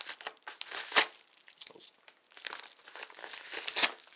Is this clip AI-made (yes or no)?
no